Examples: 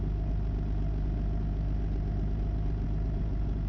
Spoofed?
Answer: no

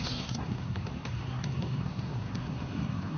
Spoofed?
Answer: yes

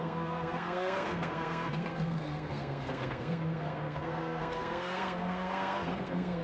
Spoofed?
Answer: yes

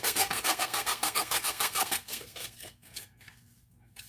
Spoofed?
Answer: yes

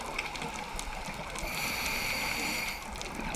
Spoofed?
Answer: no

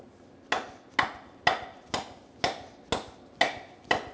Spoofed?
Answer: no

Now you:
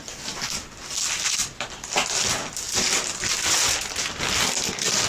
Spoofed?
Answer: no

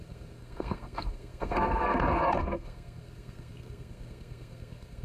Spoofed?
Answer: yes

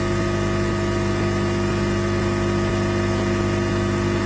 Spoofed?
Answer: no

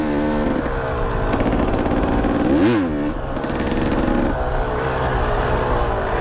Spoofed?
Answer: no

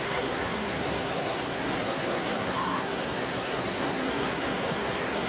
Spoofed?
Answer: yes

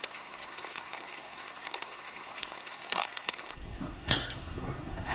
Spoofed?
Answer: yes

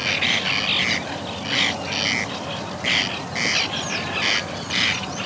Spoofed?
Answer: no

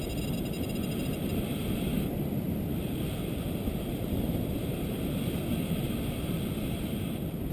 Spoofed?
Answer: no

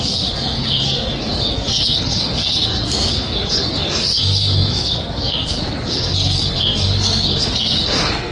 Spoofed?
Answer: yes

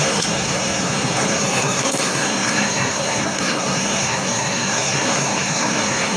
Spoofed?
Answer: yes